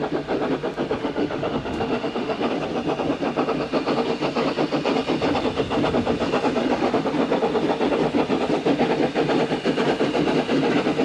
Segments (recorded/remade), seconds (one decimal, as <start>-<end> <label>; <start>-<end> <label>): 0.0-1.0 recorded; 1.0-2.5 remade; 2.5-6.6 recorded; 6.6-7.1 remade; 7.1-11.0 recorded